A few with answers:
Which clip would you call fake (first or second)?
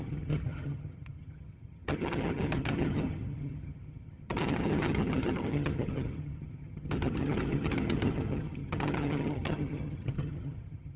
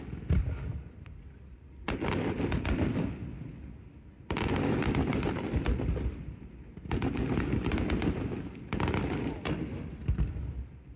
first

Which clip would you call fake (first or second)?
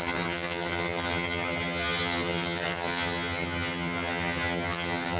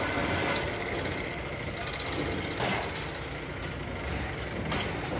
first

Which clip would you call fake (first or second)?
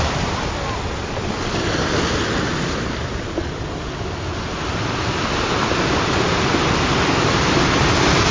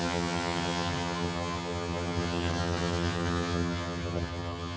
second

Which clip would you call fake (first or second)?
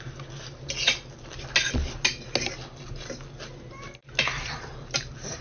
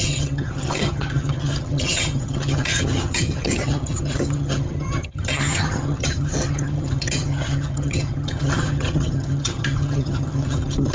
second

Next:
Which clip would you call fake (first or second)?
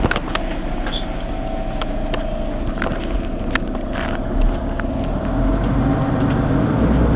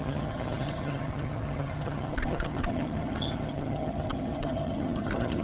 second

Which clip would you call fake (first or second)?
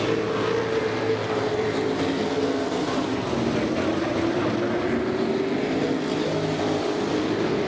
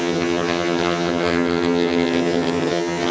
second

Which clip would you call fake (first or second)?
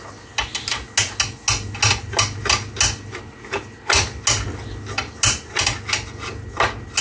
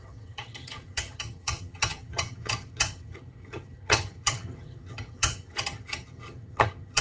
second